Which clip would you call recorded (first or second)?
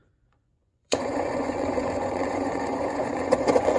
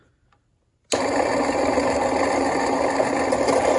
second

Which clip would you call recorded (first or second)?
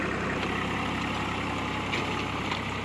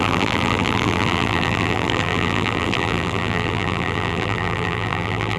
first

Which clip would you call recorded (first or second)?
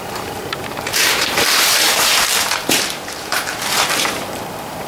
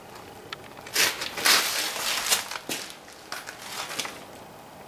second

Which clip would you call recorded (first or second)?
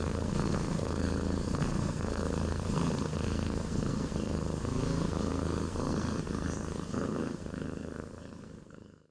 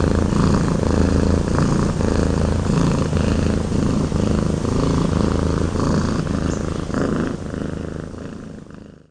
second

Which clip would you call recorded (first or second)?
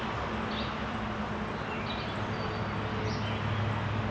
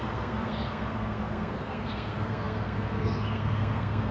first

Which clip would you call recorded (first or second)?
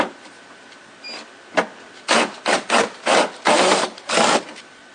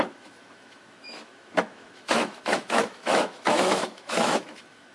first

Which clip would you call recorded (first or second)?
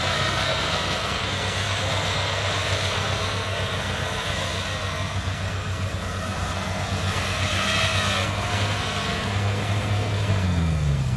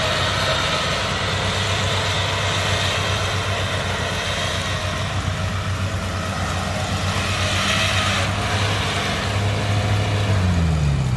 second